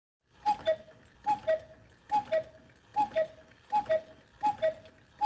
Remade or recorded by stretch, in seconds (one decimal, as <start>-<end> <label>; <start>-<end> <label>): 0.0-5.3 recorded